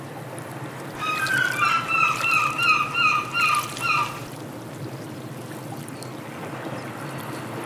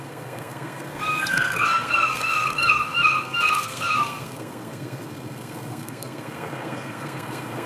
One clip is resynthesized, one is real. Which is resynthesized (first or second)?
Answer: second